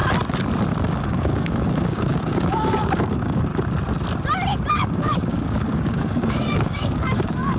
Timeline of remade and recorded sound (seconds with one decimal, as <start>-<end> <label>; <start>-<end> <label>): 0.0-0.8 recorded; 0.8-3.5 remade; 3.5-4.7 recorded; 4.7-7.6 remade